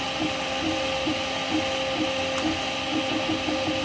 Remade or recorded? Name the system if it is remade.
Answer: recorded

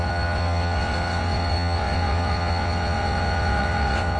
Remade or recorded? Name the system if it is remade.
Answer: remade, vocoder, WaveNeXt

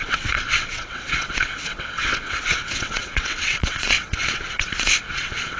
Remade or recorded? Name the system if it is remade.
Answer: remade, vocoder, WaveNeXt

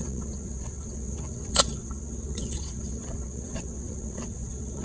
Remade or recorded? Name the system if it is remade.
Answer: remade, vocoder, WaveNeXt